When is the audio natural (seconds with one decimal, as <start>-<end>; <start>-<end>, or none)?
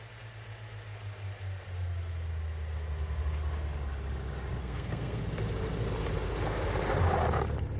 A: 0.0-4.6; 5.2-7.8